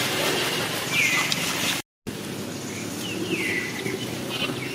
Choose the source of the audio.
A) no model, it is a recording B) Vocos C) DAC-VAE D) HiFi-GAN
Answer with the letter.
A